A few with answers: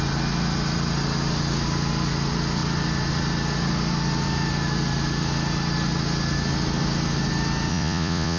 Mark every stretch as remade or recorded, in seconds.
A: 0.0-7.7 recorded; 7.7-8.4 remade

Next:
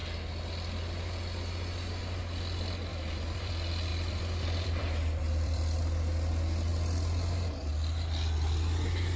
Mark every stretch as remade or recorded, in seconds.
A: 0.0-2.9 recorded; 2.9-3.5 remade; 3.5-3.9 recorded; 3.9-5.8 remade; 5.8-9.2 recorded

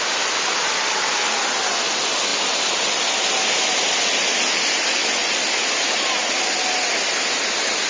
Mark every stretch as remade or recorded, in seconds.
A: 0.0-7.9 recorded

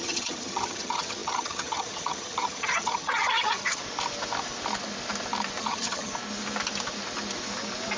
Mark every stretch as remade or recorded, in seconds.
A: 0.0-3.8 remade; 3.8-5.6 recorded; 5.6-6.1 remade; 6.1-8.0 recorded

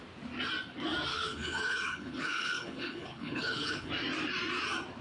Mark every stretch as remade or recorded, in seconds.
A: 0.0-1.1 recorded; 1.1-3.9 remade; 3.9-5.0 recorded